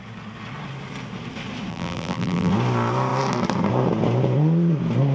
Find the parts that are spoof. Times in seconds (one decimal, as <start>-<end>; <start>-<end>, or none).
1.7-2.5